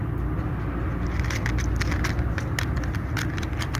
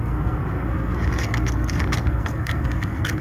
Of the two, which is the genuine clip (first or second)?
first